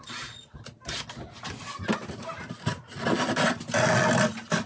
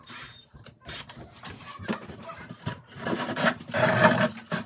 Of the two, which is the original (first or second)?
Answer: first